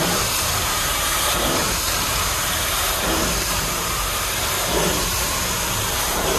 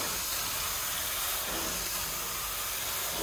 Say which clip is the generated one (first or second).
first